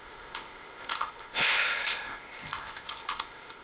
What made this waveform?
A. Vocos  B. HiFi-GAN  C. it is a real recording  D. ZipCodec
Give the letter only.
D